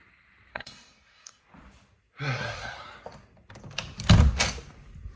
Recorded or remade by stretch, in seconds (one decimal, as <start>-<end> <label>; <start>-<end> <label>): 0.0-0.5 recorded; 0.5-1.4 remade; 1.4-5.2 recorded